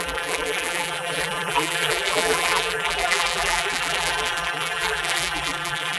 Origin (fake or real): fake